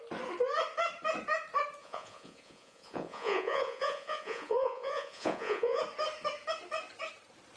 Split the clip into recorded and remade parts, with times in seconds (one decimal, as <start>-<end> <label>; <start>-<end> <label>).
0.0-1.8 recorded; 1.8-5.8 remade; 5.8-7.6 recorded